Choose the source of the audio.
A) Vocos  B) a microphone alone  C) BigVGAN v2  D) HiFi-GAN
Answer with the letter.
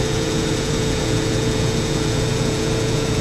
A